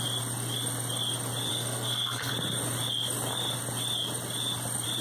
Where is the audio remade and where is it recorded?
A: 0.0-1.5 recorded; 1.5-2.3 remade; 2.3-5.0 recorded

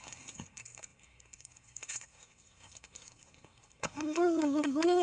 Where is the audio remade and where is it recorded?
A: 0.0-5.0 remade

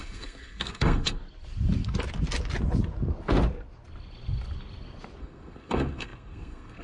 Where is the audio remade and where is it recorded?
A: 0.0-1.2 remade; 1.2-5.2 recorded; 5.2-6.8 remade

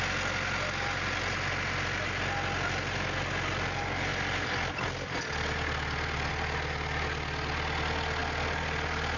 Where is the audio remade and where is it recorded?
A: 0.0-9.2 recorded

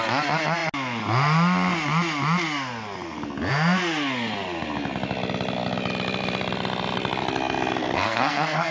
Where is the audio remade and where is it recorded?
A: 0.0-7.8 recorded; 7.8-8.7 remade